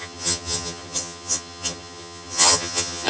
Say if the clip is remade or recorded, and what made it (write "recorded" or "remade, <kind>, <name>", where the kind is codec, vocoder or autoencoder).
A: remade, vocoder, HiFi-GAN